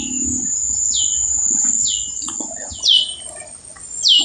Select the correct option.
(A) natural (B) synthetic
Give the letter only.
A